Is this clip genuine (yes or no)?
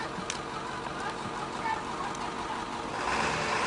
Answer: yes